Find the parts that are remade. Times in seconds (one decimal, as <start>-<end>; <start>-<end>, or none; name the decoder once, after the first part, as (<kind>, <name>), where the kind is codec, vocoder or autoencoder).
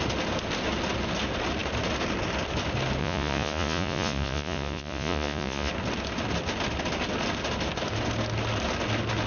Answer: 3.0-5.7 (vocoder, Vocos)